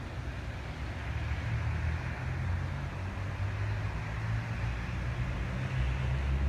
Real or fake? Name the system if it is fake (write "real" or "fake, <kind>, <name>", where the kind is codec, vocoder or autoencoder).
real